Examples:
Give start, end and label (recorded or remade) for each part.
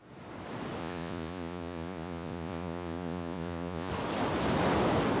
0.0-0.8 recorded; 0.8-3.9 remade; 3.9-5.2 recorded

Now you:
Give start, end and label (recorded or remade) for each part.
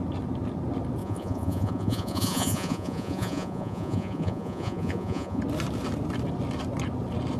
0.0-1.0 recorded; 1.0-5.4 remade; 5.4-7.4 recorded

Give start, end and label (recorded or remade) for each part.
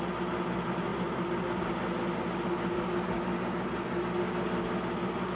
0.0-5.4 recorded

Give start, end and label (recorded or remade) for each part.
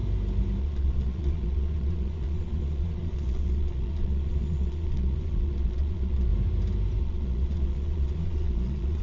0.0-0.6 recorded; 0.6-6.3 remade; 6.3-7.0 recorded; 7.0-9.0 remade